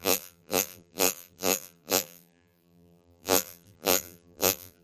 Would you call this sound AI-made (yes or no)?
yes